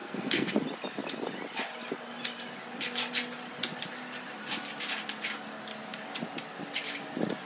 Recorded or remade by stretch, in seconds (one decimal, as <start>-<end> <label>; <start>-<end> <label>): 0.0-0.5 remade; 0.5-7.5 recorded